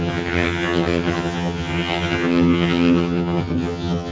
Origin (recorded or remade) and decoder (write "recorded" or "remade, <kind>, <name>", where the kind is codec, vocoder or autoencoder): remade, vocoder, HiFi-GAN